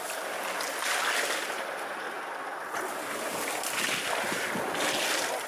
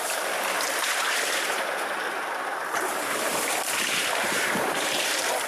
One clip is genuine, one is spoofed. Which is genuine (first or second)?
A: first